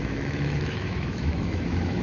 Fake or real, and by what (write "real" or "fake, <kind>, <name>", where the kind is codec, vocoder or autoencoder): fake, autoencoder, DAC-VAE